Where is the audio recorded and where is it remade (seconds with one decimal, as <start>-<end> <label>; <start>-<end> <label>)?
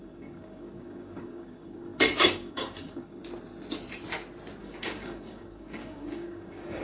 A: 0.0-3.2 remade; 3.2-4.6 recorded; 4.6-6.8 remade